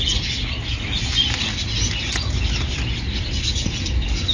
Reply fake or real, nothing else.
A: real